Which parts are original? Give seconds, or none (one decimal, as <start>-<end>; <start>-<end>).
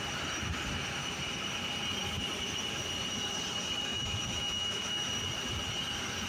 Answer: 0.0-3.9; 5.2-6.3